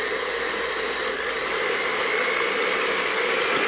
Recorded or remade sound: recorded